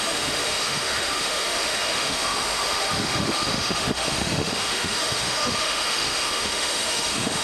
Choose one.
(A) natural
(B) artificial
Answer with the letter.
B